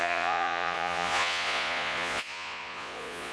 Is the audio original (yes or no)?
no